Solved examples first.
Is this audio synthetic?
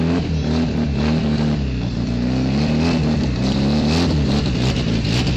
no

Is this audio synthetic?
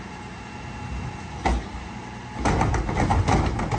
no